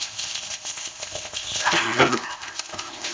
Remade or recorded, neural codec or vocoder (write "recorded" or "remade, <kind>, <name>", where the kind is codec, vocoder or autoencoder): remade, codec, ZipCodec